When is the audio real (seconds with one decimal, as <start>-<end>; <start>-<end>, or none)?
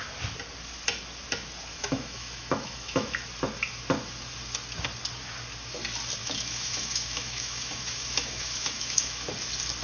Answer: 0.0-1.7; 3.1-6.2; 9.3-9.8